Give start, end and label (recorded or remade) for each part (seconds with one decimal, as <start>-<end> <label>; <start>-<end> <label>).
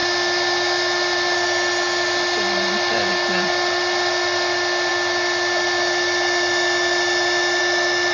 0.0-8.1 recorded